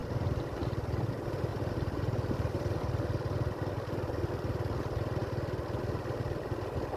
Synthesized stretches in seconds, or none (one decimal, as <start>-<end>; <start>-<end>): 0.0-1.1; 1.5-2.8; 5.2-5.8